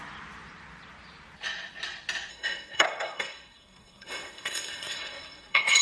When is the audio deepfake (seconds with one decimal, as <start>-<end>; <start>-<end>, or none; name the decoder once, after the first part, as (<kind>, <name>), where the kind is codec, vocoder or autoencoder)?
2.3-5.8 (codec, SNAC)